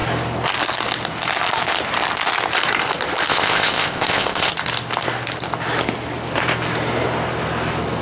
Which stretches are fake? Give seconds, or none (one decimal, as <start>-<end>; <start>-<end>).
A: 3.3-4.5